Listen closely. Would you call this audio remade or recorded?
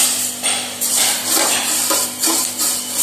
remade